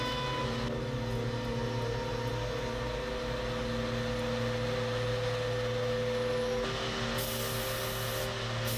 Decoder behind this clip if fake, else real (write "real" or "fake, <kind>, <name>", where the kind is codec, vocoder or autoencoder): real